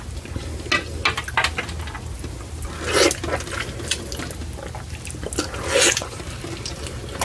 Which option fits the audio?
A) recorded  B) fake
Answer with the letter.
A